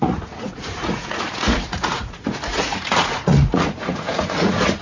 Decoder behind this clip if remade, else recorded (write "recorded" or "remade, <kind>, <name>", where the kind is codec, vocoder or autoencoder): remade, vocoder, Vocos